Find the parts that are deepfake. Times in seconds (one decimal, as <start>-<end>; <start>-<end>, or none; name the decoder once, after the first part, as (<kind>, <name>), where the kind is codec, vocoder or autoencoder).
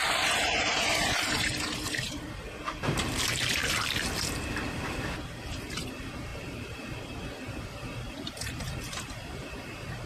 2.1-3.6 (vocoder, BigVGAN v2); 4.2-10.1